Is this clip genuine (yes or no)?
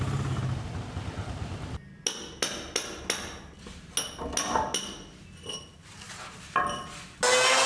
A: yes